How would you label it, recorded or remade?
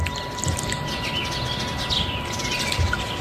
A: recorded